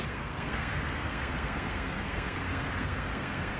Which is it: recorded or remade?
remade